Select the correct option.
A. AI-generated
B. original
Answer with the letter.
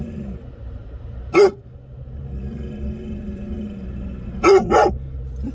A